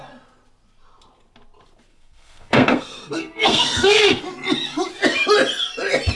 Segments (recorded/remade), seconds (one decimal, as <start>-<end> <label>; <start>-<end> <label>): 0.0-1.9 recorded; 1.9-4.2 remade; 4.2-6.2 recorded